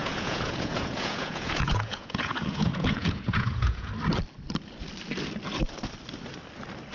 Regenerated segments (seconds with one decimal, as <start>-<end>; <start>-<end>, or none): 0.0-3.9

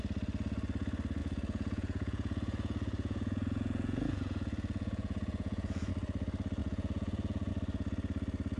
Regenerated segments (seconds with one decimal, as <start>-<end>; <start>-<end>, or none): 1.2-5.9; 6.6-7.5

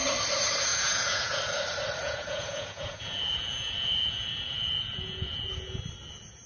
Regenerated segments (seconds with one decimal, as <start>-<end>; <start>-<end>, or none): 0.7-1.4; 2.0-5.8

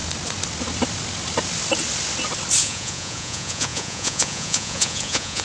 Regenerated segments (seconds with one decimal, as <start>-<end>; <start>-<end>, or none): 2.6-5.4

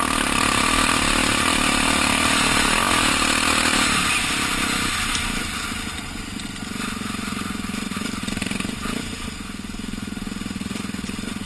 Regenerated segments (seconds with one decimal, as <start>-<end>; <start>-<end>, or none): none